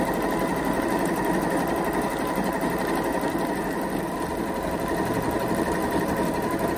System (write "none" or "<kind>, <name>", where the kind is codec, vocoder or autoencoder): none